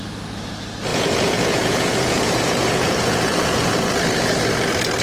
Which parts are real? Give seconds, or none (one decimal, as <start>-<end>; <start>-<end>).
0.0-0.9; 3.9-5.0